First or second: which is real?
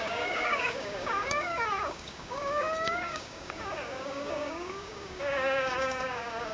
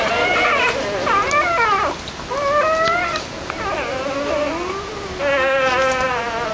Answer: second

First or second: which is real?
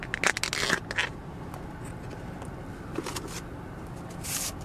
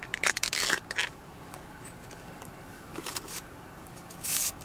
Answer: first